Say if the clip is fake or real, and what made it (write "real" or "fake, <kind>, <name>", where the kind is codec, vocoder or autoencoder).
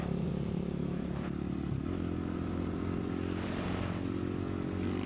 real